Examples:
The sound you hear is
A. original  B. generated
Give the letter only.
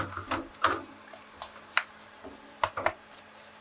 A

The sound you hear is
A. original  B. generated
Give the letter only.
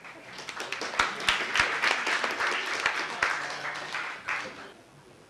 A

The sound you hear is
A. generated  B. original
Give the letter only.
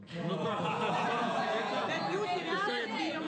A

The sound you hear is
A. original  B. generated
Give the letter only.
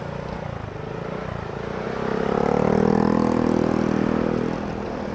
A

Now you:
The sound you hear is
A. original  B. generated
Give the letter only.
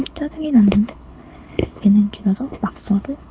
B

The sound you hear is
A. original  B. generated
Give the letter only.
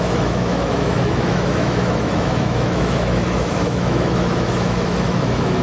B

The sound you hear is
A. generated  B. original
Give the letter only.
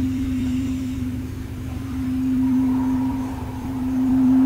A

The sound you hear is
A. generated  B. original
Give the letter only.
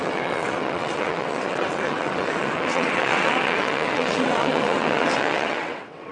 A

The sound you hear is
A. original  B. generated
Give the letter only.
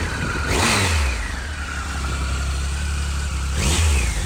A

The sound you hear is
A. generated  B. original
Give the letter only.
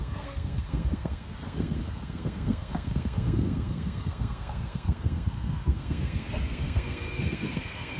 A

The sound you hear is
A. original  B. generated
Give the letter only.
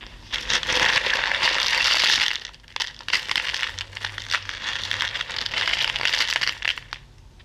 A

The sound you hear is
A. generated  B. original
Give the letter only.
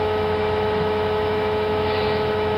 A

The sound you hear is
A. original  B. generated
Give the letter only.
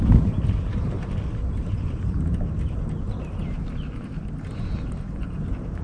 A